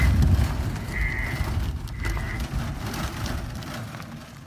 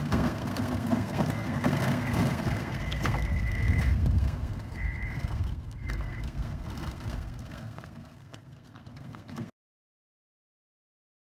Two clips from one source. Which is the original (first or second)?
first